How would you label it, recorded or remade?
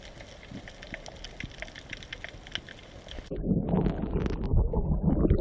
recorded